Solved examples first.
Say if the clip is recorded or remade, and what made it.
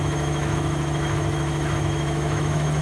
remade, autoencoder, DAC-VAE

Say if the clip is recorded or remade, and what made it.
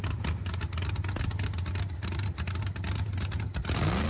recorded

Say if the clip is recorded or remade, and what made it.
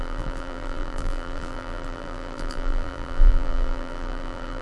remade, vocoder, BigVGAN v2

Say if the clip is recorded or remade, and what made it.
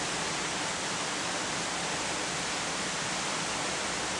recorded